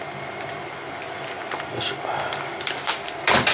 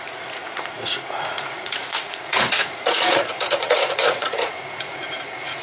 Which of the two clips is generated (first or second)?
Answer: second